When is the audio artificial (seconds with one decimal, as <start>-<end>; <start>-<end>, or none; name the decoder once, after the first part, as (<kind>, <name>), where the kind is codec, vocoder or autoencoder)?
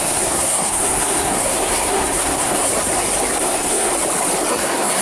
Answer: 0.0-2.7 (codec, SNAC); 3.4-3.9; 4.5-5.0